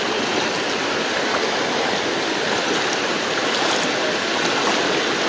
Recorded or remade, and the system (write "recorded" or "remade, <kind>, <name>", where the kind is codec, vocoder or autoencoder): recorded